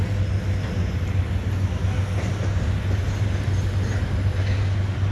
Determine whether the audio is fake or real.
real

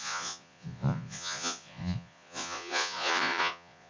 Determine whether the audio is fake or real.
fake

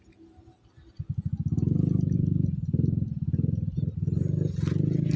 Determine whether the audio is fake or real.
real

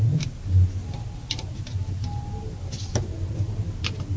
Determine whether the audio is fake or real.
real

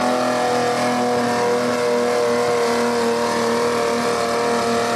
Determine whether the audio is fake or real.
real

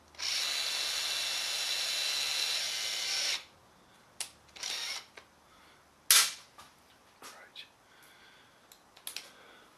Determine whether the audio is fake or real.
real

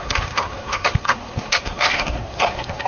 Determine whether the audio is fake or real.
fake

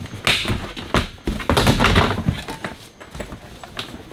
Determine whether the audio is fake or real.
real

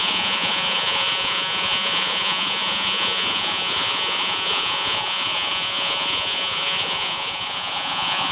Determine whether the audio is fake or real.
fake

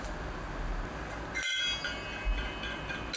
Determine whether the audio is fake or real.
real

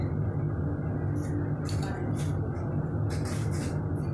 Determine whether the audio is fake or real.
real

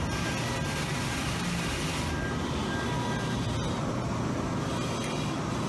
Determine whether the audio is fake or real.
real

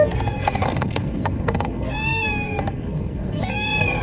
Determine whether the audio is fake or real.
fake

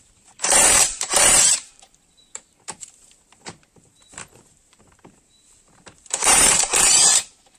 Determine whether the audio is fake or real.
fake